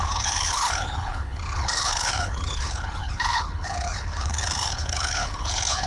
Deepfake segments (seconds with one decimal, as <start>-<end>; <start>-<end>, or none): 0.0-5.9